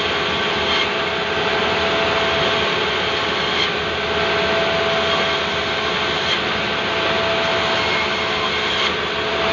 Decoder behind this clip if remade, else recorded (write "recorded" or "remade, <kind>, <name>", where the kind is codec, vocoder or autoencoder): recorded